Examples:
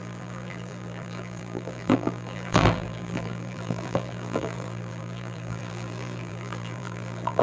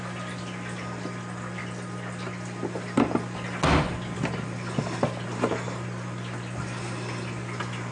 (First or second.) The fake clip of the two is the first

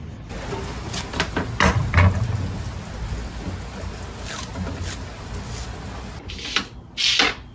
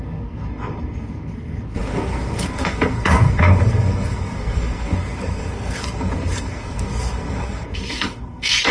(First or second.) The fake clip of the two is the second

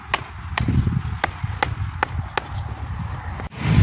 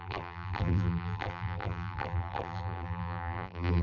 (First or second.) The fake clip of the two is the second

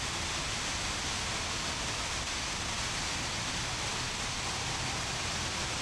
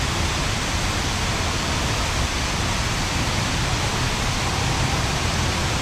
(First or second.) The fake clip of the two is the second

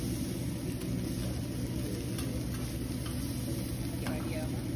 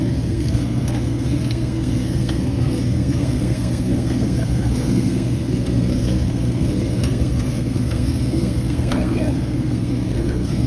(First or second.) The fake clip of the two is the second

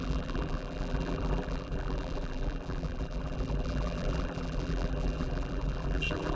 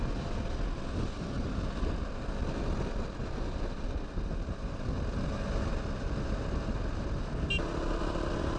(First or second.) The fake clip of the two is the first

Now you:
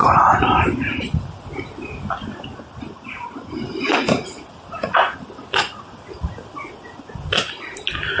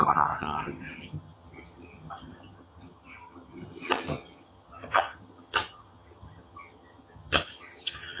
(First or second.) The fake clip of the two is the second